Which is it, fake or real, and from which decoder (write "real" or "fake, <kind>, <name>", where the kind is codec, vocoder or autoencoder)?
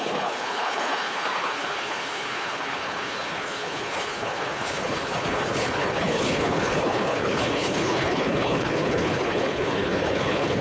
fake, codec, HILCodec